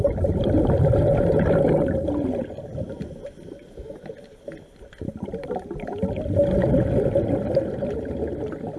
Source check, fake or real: real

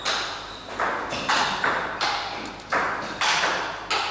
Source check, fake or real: real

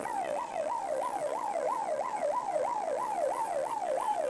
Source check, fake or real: fake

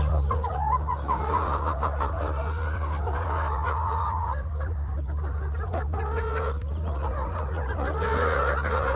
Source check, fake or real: fake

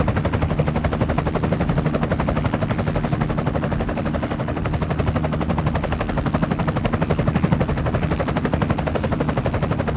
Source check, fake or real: real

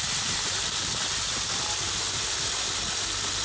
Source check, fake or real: real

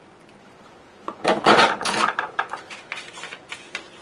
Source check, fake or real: fake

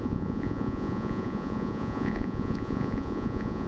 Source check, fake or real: fake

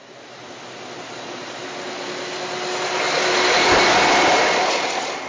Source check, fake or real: real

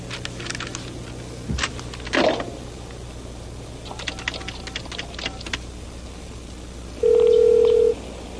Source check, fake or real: real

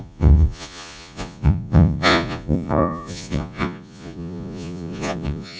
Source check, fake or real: fake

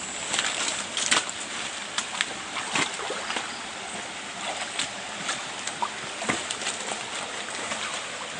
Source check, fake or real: real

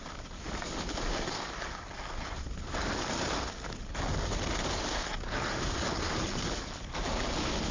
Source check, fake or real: real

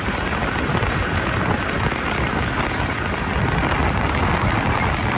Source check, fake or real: real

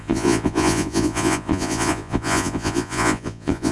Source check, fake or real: fake